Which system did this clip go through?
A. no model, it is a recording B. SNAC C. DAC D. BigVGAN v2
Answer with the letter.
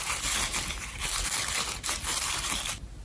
A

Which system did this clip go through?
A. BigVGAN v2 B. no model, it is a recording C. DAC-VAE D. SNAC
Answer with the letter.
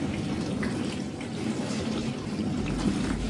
B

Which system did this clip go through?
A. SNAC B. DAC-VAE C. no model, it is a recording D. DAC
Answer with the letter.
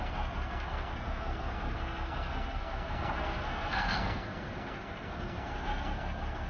A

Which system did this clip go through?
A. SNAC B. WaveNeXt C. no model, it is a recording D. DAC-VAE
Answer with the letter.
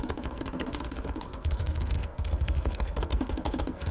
A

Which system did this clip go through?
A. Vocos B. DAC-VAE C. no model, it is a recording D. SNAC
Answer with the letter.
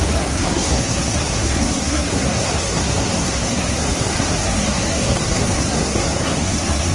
D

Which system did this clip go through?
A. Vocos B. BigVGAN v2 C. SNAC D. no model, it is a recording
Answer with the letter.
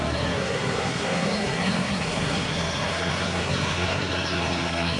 C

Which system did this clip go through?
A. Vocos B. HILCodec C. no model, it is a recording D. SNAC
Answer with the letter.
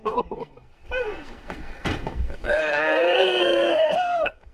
D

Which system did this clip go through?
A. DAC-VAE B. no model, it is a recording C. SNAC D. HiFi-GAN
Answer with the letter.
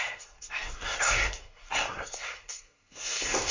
C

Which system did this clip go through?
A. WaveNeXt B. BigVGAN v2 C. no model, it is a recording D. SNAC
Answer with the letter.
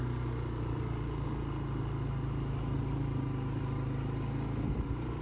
C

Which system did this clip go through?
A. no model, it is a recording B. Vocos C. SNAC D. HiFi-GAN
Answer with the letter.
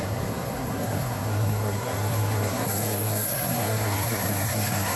C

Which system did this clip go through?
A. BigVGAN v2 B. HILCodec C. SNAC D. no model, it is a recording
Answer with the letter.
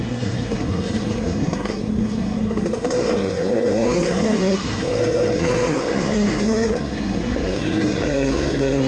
C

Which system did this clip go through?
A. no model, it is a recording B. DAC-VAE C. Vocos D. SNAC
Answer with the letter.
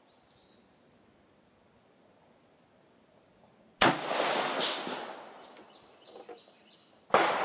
A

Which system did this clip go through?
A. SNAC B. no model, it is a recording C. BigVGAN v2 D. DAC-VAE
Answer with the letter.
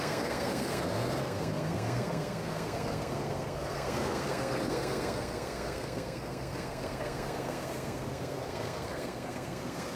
A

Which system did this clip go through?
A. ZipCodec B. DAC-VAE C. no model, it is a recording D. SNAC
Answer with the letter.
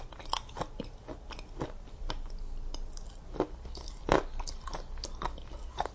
C